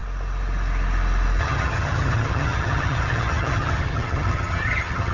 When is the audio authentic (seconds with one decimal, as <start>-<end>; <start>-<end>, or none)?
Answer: 0.0-1.4